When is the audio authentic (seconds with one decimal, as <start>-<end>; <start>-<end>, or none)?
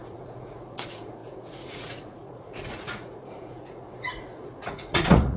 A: none